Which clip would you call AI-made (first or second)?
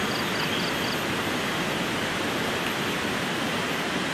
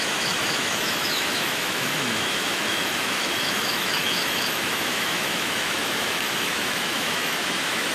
second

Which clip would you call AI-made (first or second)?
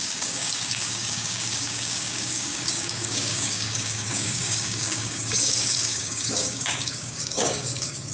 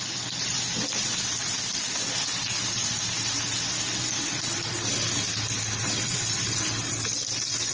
first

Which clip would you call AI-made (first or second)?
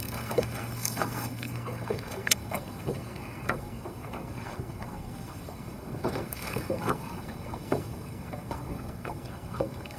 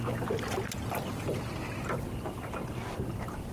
first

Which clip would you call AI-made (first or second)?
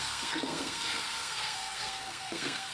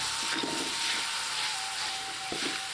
first